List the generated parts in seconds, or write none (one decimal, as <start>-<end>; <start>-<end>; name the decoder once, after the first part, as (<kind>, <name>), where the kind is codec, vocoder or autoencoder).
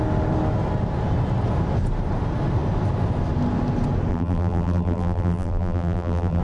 4.1-6.4 (vocoder, BigVGAN v2)